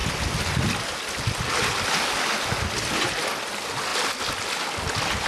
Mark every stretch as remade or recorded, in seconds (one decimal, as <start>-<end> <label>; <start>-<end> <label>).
0.0-5.3 recorded